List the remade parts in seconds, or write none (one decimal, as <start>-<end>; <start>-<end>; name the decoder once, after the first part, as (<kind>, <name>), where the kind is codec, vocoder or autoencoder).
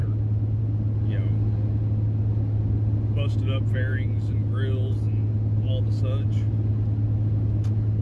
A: none